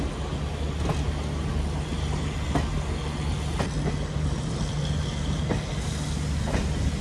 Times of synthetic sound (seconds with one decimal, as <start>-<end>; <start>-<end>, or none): none